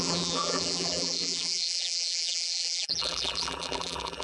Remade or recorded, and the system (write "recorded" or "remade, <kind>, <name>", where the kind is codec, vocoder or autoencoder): remade, vocoder, BigVGAN v2